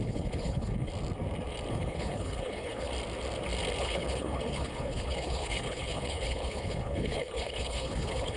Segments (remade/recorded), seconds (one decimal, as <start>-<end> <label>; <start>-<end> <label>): 0.0-0.9 remade; 0.9-1.7 recorded; 1.7-2.9 remade; 2.9-3.8 recorded; 3.8-8.4 remade